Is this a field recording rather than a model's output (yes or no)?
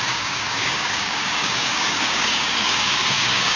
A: no